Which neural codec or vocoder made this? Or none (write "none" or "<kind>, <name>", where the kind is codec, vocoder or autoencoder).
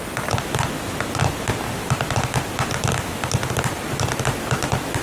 none